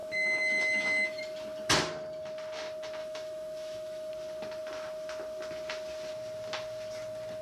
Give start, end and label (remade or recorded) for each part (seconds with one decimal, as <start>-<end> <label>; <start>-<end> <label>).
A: 0.0-1.2 remade; 1.2-3.0 recorded; 3.0-4.1 remade; 4.1-7.4 recorded